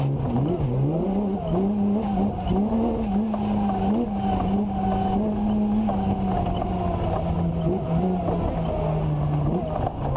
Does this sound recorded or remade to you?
recorded